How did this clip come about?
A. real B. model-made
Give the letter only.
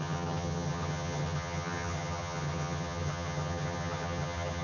B